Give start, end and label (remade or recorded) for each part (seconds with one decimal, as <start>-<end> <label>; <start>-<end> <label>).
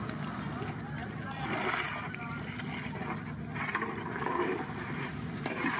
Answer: 0.0-5.8 recorded